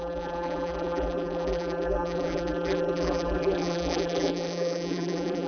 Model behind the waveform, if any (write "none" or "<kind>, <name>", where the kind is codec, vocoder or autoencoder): vocoder, BigVGAN v2